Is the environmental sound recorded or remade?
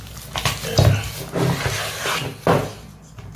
recorded